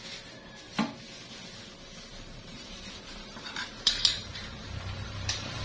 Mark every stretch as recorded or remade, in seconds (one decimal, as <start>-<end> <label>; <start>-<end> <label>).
0.0-2.1 recorded; 2.1-5.6 remade